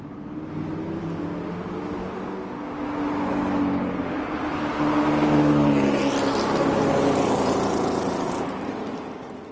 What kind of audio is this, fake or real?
real